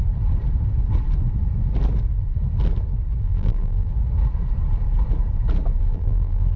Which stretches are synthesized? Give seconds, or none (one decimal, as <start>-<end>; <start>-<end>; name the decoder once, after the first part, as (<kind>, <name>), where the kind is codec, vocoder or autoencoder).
3.2-3.9 (vocoder, BigVGAN v2); 5.8-6.6